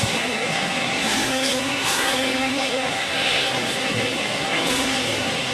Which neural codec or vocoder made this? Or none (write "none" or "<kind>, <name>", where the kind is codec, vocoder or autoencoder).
codec, SNAC